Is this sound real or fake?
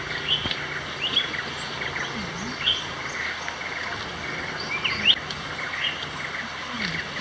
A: real